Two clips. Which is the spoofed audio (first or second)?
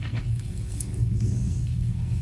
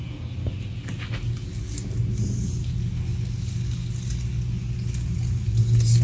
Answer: first